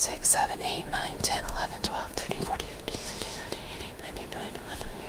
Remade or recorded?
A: remade